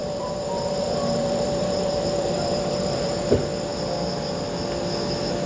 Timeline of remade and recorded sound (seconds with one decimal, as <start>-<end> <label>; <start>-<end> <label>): 0.0-3.3 remade; 3.3-5.5 recorded